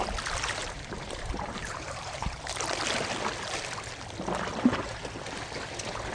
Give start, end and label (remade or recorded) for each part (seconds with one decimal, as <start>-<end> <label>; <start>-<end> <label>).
0.0-0.6 recorded; 0.6-2.6 remade; 2.6-4.5 recorded; 4.5-5.0 remade; 5.0-6.1 recorded